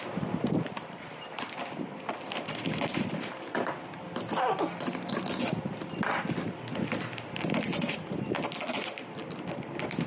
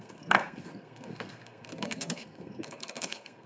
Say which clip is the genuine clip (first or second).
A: first